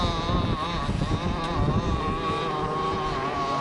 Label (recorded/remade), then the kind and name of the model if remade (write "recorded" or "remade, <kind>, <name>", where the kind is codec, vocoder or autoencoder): recorded